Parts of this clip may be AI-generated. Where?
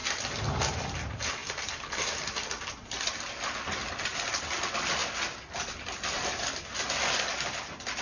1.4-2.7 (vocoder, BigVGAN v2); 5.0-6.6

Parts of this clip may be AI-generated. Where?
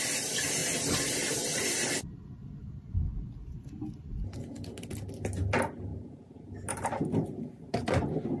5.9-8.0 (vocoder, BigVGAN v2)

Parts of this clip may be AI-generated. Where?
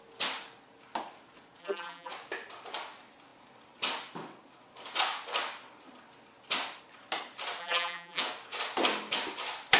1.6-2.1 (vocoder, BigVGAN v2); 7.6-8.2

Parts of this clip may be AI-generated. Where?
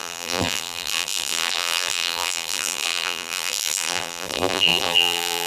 0.0-5.5 (vocoder, BigVGAN v2)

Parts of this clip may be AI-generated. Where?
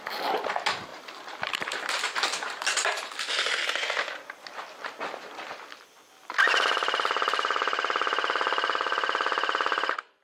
0.9-3.2 (vocoder, BigVGAN v2)